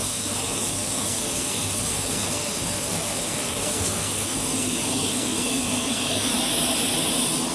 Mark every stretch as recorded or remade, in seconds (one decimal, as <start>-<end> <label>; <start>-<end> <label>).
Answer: 0.0-6.3 remade; 6.3-7.5 recorded